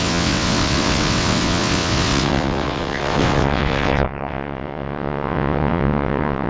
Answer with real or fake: fake